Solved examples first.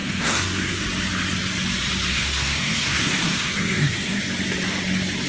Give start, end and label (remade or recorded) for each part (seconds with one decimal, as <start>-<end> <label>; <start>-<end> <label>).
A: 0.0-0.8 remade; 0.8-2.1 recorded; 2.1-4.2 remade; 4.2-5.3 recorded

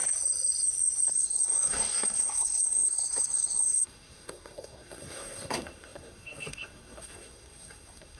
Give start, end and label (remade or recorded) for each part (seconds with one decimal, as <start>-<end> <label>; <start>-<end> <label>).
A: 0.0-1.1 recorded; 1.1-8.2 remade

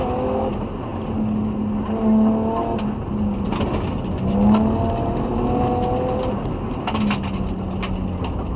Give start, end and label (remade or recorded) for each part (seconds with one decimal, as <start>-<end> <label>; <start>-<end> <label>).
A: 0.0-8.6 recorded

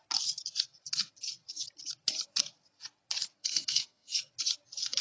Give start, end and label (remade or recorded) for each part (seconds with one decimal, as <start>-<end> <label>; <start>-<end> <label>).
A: 0.0-3.4 recorded; 3.4-4.3 remade; 4.3-5.0 recorded

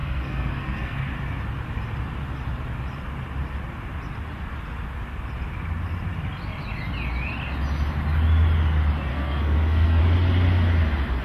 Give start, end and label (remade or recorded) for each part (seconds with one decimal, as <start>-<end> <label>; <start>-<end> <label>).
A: 0.0-1.1 remade; 1.1-9.1 recorded; 9.1-10.0 remade; 10.0-11.2 recorded